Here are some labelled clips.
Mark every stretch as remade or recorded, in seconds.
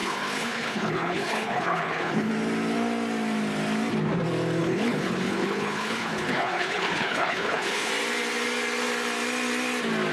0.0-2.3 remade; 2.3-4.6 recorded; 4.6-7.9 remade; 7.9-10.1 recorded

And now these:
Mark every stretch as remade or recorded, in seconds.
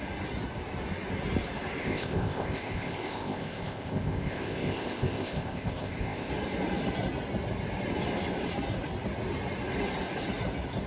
0.0-1.8 recorded; 1.8-6.3 remade; 6.3-10.9 recorded